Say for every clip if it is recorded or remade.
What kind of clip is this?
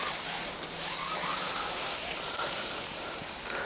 recorded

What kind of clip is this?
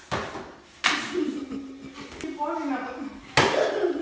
recorded